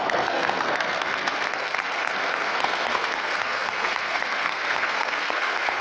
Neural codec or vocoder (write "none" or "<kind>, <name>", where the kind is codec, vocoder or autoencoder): codec, SNAC